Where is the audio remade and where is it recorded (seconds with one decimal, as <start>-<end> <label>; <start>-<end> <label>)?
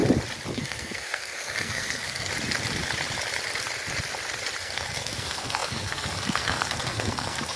0.0-0.5 recorded; 0.5-2.3 remade; 2.3-4.6 recorded; 4.6-7.6 remade